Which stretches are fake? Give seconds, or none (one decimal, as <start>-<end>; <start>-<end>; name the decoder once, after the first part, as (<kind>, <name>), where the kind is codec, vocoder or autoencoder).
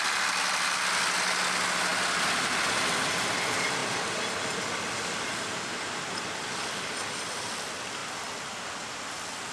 none